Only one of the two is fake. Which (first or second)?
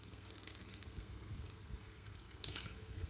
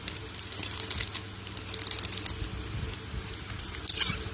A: first